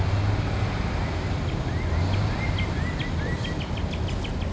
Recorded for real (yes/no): yes